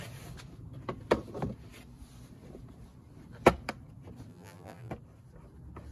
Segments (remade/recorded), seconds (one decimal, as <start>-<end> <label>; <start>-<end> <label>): 0.0-4.3 recorded; 4.3-4.9 remade; 4.9-5.9 recorded